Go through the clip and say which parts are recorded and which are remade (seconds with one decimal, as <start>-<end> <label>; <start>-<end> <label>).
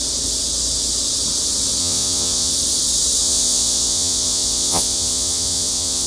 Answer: 0.0-1.8 recorded; 1.8-2.5 remade; 2.5-3.2 recorded; 3.2-6.1 remade